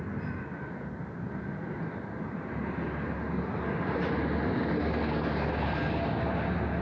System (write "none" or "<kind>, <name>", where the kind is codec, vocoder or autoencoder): none